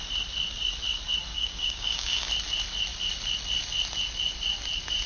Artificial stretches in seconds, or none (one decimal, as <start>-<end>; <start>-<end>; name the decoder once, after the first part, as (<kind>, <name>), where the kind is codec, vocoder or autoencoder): 1.3-2.3 (codec, DAC)